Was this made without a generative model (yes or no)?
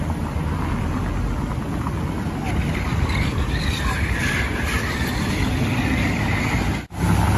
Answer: yes